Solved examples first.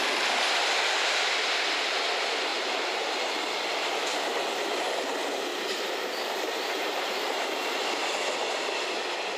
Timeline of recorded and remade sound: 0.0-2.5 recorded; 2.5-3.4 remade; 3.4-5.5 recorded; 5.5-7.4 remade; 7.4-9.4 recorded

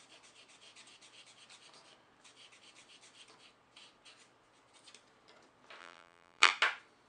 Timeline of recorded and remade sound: 0.0-5.8 recorded; 5.8-6.5 remade; 6.5-7.1 recorded

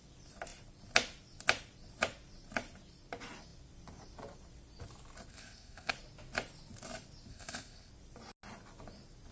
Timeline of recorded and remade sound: 0.0-5.3 recorded; 5.3-5.9 remade; 5.9-7.3 recorded; 7.3-7.9 remade; 7.9-9.3 recorded

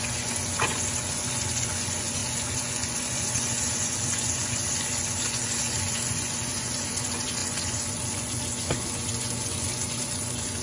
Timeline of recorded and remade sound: 0.0-10.6 remade

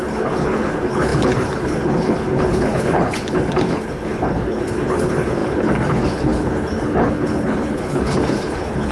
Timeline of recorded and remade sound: 0.0-8.9 remade

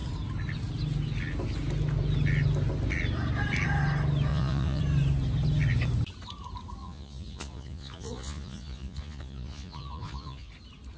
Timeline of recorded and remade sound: 0.0-4.3 recorded; 4.3-4.8 remade; 4.8-6.8 recorded; 6.8-10.5 remade; 10.5-11.0 recorded

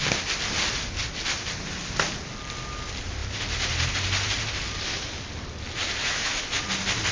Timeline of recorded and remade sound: 0.0-6.0 recorded; 6.0-6.6 remade; 6.6-7.1 recorded

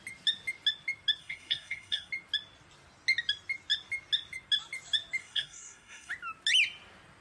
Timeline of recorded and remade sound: 0.0-1.2 recorded; 1.2-2.1 remade; 2.1-5.2 recorded; 5.2-6.1 remade; 6.1-7.2 recorded